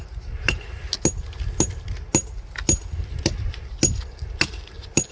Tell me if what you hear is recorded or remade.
recorded